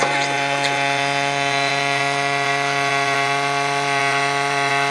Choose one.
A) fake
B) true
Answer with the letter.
A